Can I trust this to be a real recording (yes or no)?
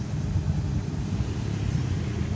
yes